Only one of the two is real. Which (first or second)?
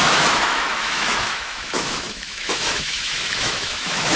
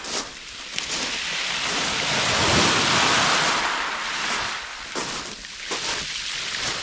second